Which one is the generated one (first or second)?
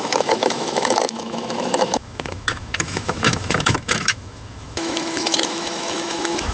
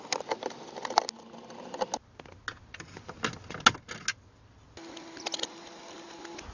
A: first